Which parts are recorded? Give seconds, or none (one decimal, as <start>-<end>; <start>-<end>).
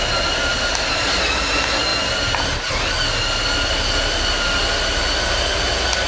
0.0-6.1